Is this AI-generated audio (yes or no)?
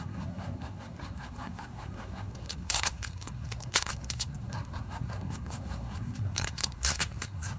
yes